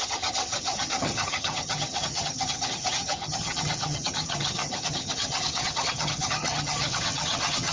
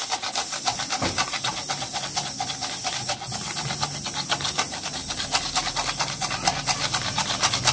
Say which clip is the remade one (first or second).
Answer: first